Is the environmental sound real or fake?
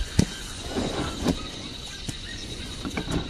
fake